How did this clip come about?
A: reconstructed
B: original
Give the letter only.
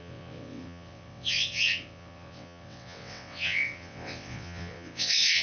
A